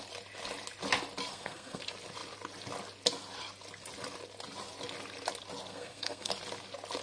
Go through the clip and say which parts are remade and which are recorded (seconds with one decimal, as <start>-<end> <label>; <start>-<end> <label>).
0.0-1.3 recorded; 1.3-1.8 remade; 1.8-5.7 recorded; 5.7-6.3 remade; 6.3-7.0 recorded

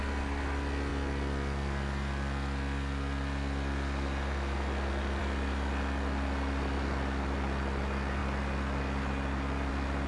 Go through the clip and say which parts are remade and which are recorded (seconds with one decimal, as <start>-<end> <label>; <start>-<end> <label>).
0.0-10.1 recorded

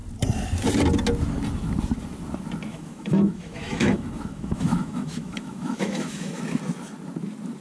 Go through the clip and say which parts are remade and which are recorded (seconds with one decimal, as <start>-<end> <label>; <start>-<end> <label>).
0.0-2.7 recorded; 2.7-6.4 remade; 6.4-7.6 recorded

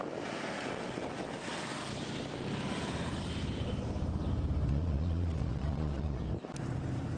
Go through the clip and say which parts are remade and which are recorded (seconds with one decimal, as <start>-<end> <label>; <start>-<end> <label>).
0.0-4.7 recorded; 4.7-6.2 remade; 6.2-7.2 recorded

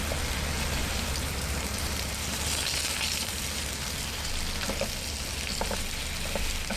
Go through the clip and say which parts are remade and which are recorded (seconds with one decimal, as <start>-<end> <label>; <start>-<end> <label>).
0.0-0.8 recorded; 0.8-4.3 remade; 4.3-6.8 recorded